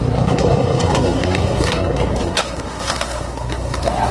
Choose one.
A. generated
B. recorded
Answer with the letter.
A